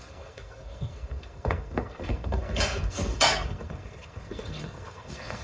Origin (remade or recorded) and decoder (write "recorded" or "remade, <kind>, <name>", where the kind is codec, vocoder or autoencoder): remade, codec, SNAC